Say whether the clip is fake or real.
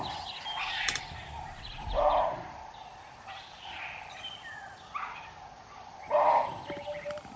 fake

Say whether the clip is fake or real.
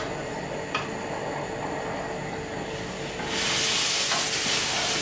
real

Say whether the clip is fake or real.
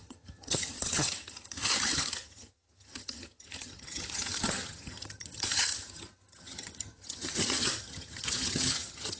fake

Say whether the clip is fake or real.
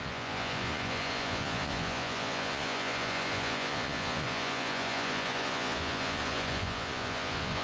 fake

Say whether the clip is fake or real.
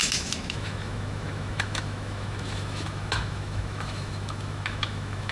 fake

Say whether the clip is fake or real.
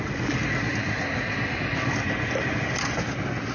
real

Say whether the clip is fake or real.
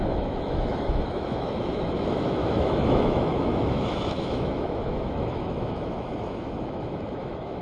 fake